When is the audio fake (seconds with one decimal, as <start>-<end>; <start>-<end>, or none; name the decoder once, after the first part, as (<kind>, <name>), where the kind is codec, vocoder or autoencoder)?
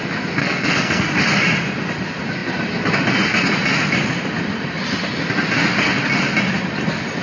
0.4-1.1 (codec, SNAC)